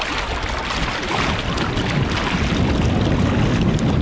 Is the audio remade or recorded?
recorded